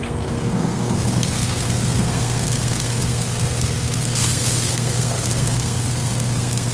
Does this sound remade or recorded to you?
remade